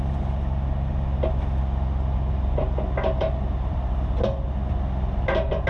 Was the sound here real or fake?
real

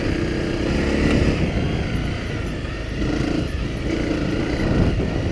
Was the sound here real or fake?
real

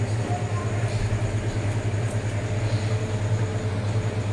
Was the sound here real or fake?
real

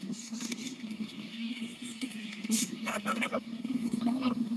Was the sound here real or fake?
fake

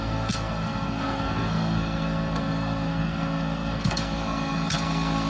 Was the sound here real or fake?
fake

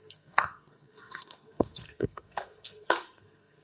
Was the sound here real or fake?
fake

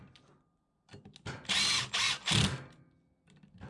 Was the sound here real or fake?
real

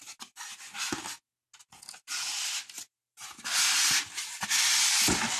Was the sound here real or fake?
real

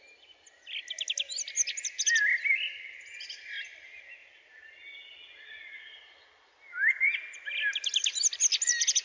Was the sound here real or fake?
real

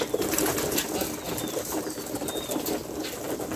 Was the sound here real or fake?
real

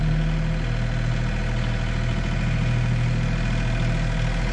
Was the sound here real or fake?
real